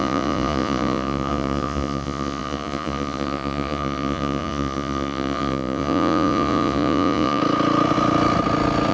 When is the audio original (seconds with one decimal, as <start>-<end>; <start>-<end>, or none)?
7.4-8.9